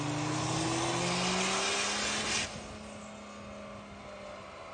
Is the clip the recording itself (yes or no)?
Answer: yes